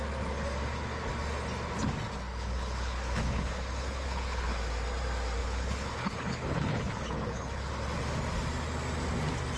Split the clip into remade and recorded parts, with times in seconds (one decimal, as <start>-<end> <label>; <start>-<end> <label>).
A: 0.0-2.3 recorded; 2.3-4.6 remade; 4.6-5.4 recorded; 5.4-7.7 remade; 7.7-9.6 recorded